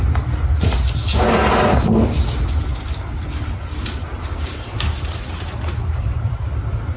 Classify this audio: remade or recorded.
recorded